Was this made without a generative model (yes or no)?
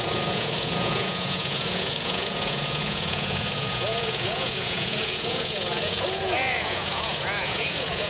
no